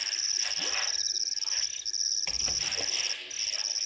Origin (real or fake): real